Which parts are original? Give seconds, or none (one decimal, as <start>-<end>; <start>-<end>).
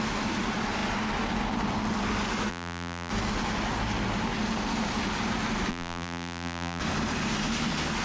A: 0.0-2.5; 3.1-5.7; 6.8-8.0